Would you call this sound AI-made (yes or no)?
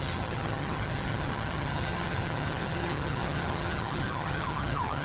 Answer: yes